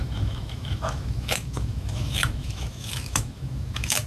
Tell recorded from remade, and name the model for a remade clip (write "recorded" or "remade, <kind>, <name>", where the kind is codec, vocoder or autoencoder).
remade, autoencoder, DAC-VAE